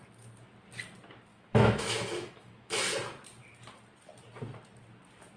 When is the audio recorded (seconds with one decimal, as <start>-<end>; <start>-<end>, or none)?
0.0-1.3; 2.8-5.4